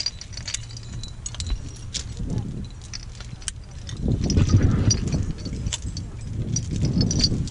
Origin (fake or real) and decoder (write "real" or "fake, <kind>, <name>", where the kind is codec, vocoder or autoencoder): real